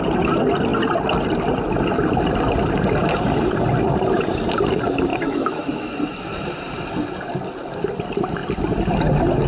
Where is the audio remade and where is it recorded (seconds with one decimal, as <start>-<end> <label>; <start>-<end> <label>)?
0.0-5.1 recorded; 5.1-5.9 remade; 5.9-9.5 recorded